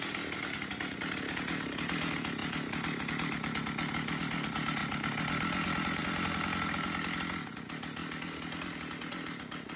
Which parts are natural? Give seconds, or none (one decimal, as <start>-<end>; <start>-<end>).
0.0-4.8; 6.0-9.8